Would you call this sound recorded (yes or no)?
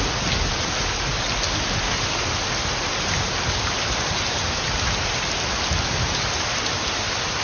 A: yes